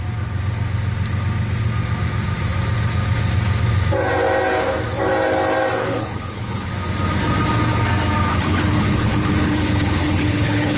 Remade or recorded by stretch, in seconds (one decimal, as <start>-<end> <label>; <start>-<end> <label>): 0.0-5.8 recorded; 5.8-6.7 remade; 6.7-8.3 recorded; 8.3-10.8 remade